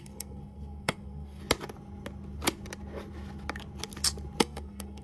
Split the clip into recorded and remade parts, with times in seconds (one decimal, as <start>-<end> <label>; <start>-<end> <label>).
0.0-1.4 remade; 1.4-4.4 recorded; 4.4-5.0 remade